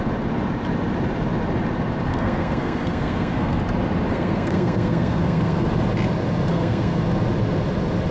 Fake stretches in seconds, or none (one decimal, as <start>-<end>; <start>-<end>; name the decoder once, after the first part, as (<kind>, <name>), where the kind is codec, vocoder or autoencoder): 2.1-3.6 (codec, SNAC); 4.1-5.7; 6.5-7.0